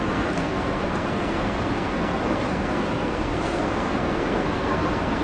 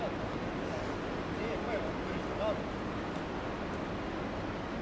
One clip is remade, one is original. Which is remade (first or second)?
first